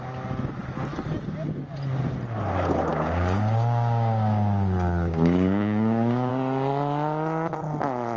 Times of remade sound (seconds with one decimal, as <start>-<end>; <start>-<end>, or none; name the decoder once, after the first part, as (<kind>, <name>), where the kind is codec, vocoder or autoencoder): 2.9-6.3 (codec, DAC)